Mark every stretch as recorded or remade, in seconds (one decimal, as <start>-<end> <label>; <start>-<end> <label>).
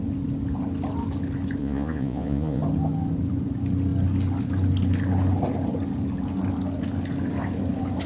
0.0-1.6 recorded; 1.6-2.6 remade; 2.6-8.1 recorded